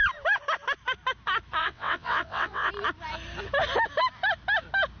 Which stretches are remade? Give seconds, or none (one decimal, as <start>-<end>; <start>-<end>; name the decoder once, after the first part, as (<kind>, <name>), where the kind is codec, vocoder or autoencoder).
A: 1.6-2.7 (vocoder, WaveNeXt)